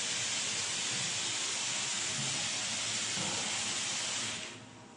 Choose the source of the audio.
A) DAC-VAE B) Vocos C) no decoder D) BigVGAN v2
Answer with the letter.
C